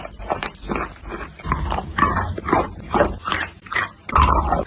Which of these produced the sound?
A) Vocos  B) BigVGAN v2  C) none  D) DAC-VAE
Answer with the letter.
B